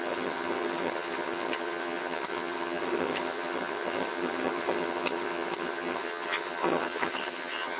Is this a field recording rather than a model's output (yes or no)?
no